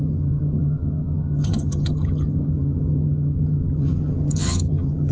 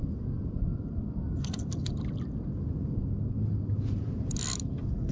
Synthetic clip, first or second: first